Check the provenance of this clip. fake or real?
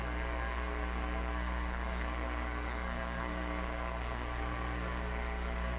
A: fake